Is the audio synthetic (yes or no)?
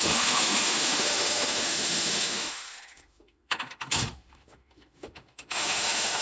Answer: yes